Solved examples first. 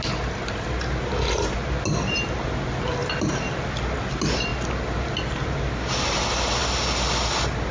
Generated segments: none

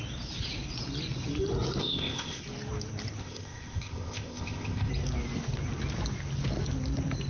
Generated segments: 1.8-2.4 (codec, ZipCodec); 3.2-4.9

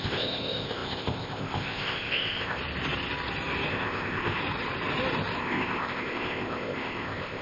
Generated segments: 0.0-2.6 (codec, ZipCodec); 3.7-4.4; 5.4-7.4

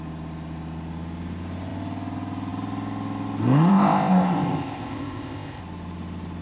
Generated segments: 3.7-5.6 (codec, ZipCodec)

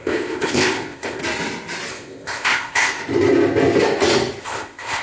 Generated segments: 0.0-1.2 (codec, ZipCodec); 1.9-3.0; 4.4-5.0